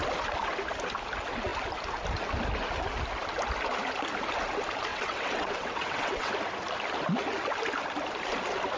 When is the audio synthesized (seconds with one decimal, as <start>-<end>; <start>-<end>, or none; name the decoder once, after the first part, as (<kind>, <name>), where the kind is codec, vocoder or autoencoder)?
4.9-6.3 (vocoder, WaveNeXt)